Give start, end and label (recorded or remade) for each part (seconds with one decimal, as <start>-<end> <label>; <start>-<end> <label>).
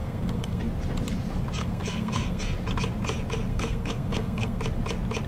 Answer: 0.0-0.6 remade; 0.6-1.6 recorded; 1.6-2.4 remade; 2.4-3.5 recorded; 3.5-4.6 remade; 4.6-5.3 recorded